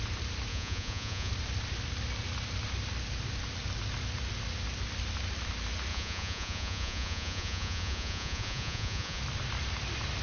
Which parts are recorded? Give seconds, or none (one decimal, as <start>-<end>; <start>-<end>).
0.0-0.5; 1.3-5.9; 9.2-10.2